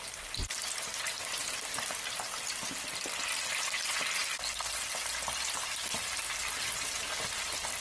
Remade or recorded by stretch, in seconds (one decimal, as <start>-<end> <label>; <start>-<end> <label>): 0.0-7.8 recorded